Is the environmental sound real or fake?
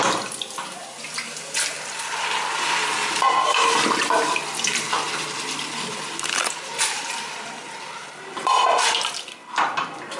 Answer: fake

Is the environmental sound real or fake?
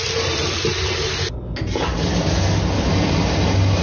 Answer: real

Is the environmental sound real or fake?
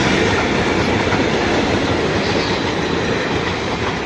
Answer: fake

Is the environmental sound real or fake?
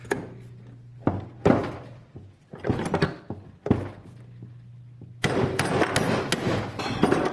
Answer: real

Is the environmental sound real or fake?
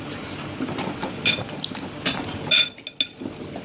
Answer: real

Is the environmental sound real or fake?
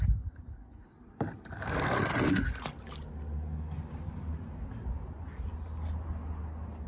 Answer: real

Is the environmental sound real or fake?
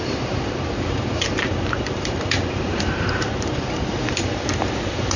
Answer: fake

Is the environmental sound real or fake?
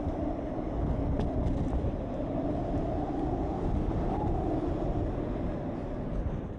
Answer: real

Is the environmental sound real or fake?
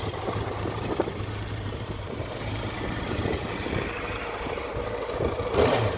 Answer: fake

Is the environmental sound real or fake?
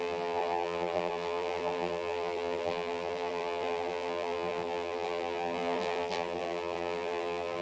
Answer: fake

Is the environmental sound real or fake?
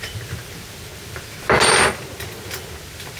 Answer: real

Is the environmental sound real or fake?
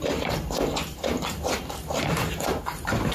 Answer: fake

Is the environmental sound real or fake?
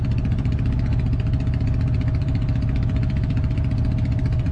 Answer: fake